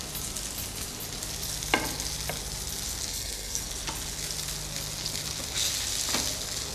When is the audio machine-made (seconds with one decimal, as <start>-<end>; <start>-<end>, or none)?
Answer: 3.1-3.6